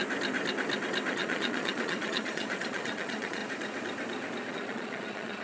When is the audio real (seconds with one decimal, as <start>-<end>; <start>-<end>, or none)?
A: 0.0-1.1; 3.4-4.5

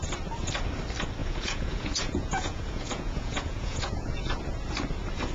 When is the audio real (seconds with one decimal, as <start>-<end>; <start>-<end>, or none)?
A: 0.0-1.2; 4.4-5.3

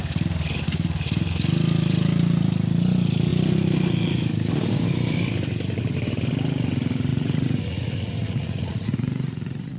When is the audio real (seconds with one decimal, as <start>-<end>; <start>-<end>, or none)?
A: 0.0-7.1

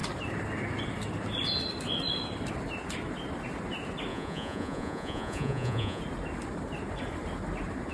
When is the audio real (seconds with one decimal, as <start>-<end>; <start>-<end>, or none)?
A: 0.0-4.1; 6.0-7.9

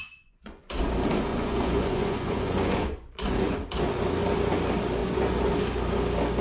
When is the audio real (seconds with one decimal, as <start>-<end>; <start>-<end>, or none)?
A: 0.7-1.3; 3.5-5.0; 5.5-6.4

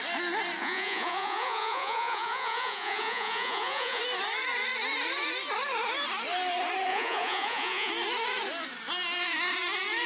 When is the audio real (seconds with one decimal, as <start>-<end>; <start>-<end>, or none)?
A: 0.0-0.6; 4.0-6.9; 7.9-10.1

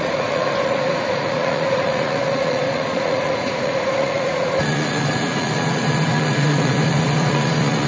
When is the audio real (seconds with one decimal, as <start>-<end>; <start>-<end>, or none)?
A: none

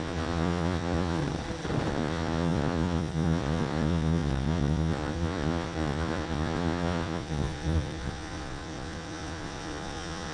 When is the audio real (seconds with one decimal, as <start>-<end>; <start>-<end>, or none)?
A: 1.2-1.9